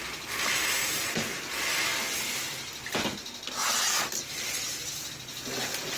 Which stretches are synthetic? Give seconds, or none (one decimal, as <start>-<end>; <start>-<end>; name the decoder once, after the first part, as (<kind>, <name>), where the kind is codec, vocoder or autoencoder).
0.8-2.5 (vocoder, BigVGAN v2); 3.6-5.1